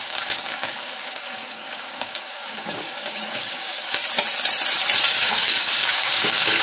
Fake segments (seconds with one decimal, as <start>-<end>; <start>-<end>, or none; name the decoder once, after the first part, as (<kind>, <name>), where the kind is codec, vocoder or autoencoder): 0.0-4.0 (codec, DAC); 5.1-6.6